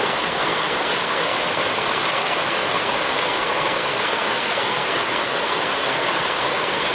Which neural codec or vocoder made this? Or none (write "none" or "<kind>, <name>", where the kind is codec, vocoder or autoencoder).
codec, SNAC